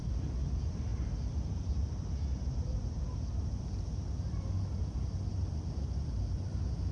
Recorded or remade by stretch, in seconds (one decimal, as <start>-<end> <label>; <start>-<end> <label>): 0.0-6.9 recorded